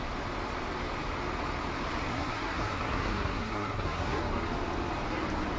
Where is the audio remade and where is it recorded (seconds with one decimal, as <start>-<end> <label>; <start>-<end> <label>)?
0.0-2.1 recorded; 2.1-4.2 remade; 4.2-5.6 recorded